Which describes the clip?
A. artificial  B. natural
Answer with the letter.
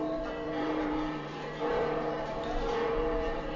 A